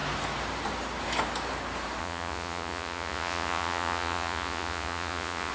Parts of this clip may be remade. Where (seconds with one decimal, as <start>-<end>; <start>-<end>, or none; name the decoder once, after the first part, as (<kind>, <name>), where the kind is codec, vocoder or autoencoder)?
2.0-5.5 (vocoder, Vocos)